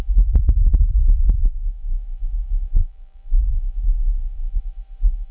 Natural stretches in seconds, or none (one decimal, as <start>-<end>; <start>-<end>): 0.0-1.4; 4.6-5.3